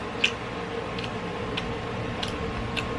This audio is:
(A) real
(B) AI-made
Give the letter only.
A